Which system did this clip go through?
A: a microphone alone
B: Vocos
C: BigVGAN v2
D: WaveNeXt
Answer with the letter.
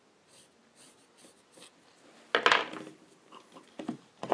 A